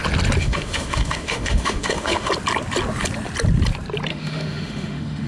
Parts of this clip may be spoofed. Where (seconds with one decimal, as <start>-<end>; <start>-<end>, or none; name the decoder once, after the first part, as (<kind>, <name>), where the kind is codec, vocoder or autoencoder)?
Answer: 0.4-2.3 (autoencoder, DAC-VAE); 4.1-5.3